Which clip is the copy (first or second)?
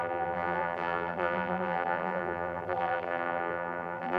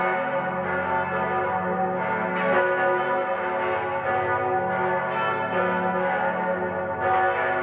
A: first